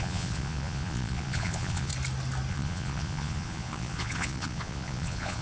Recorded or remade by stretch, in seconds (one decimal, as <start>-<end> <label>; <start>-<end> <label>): 0.0-1.9 remade; 1.9-2.5 recorded; 2.5-5.4 remade